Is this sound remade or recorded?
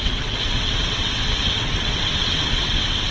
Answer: remade